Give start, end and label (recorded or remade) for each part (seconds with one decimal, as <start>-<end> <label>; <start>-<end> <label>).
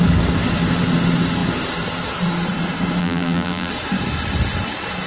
0.0-3.0 recorded; 3.0-3.7 remade; 3.7-5.1 recorded